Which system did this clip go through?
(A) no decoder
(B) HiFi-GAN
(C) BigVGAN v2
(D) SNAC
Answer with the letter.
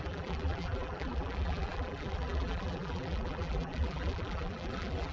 C